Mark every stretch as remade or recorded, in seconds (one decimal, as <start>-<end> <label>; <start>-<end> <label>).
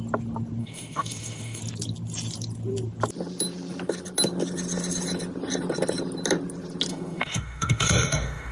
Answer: 0.0-0.6 recorded; 0.6-1.6 remade; 1.6-6.9 recorded; 6.9-8.5 remade